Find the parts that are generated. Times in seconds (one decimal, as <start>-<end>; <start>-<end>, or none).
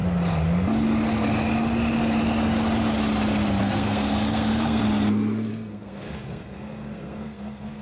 3.6-4.8; 5.5-7.8